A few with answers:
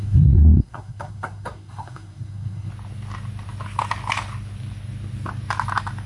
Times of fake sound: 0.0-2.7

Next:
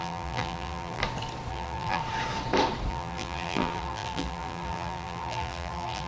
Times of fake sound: 0.0-1.0; 1.5-2.0; 2.9-6.1

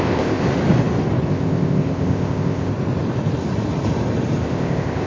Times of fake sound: 0.0-0.4; 1.3-2.7; 4.4-5.1

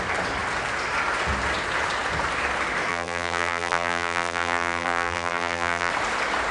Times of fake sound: 2.9-5.9

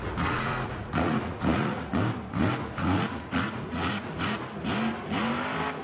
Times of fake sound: 0.0-1.9; 2.6-4.4

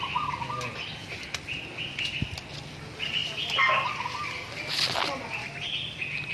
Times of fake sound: none